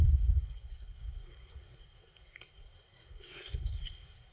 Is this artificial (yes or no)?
yes